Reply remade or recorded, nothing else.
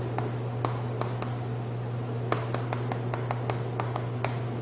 recorded